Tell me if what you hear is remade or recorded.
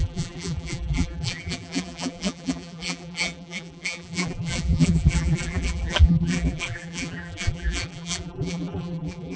remade